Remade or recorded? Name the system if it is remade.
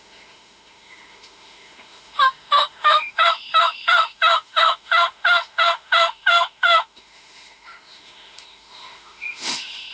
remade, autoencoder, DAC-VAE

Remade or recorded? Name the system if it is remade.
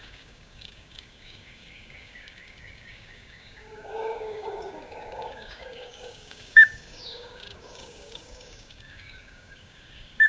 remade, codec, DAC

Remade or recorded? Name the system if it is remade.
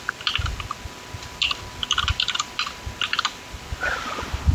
recorded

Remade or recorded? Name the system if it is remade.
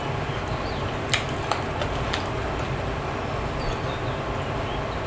recorded